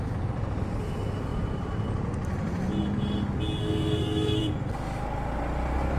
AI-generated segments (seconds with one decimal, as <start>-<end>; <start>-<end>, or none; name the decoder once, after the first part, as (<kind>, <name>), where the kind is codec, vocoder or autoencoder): 3.6-4.4 (codec, SNAC)